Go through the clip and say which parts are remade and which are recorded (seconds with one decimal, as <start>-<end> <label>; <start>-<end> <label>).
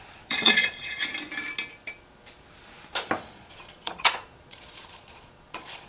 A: 0.0-1.1 remade; 1.1-3.2 recorded; 3.2-5.9 remade